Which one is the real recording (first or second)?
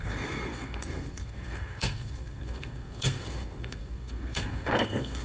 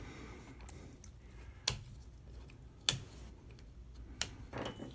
second